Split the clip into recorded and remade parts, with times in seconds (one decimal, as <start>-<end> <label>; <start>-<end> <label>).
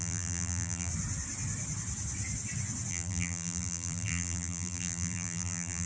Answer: 0.0-0.9 remade; 0.9-2.9 recorded; 2.9-5.9 remade